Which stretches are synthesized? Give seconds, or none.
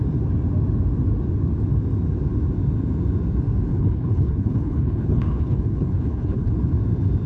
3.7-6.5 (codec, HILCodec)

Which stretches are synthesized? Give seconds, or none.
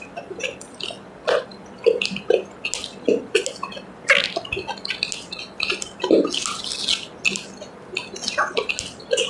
none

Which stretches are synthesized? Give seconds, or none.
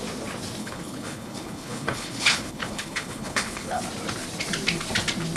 0.6-3.8 (codec, HILCodec)